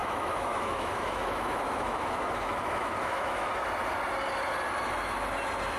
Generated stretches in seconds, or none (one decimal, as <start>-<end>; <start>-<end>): 0.0-3.5